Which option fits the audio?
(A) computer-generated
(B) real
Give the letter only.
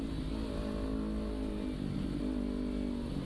B